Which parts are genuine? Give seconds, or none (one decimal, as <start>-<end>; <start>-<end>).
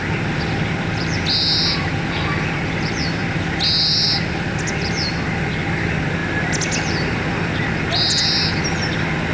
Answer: 0.0-9.3